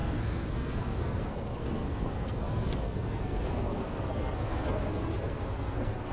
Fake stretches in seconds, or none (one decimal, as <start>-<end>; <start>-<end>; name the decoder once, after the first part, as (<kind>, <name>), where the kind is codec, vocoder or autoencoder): 0.0-6.1 (codec, SNAC)